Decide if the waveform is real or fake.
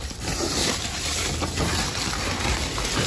real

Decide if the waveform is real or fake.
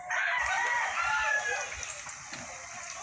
real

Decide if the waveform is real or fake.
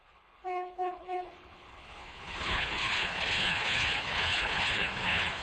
fake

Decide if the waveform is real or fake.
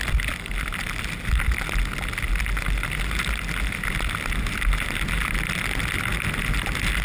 real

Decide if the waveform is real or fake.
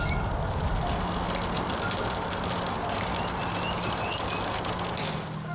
real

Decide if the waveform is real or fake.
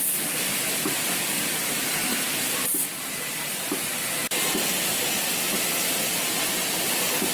real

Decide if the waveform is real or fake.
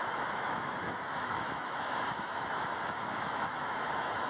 fake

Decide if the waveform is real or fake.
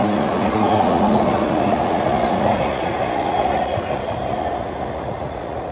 fake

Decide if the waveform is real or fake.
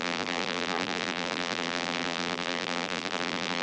fake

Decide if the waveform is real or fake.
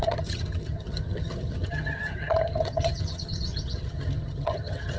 fake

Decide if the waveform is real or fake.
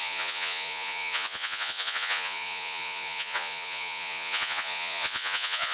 fake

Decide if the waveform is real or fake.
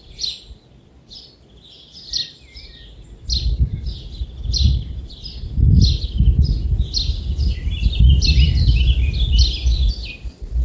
real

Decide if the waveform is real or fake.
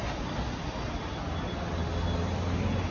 real